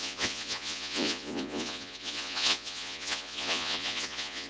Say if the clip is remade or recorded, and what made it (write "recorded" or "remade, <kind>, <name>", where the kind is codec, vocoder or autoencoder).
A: remade, vocoder, Vocos